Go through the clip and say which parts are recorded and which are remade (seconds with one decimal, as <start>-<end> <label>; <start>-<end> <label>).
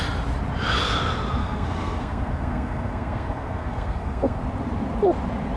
0.0-1.4 recorded; 1.4-4.4 remade; 4.4-5.6 recorded